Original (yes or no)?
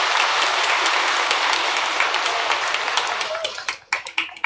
yes